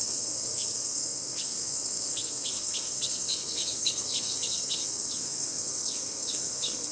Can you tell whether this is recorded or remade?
remade